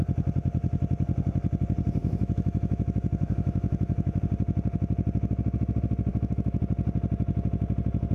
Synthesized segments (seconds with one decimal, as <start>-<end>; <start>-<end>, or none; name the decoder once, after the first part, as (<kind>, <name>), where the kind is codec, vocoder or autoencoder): 2.0-4.2 (autoencoder, DAC-VAE); 6.1-6.6